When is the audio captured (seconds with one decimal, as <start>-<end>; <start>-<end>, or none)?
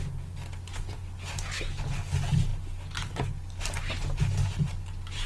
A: 0.0-5.3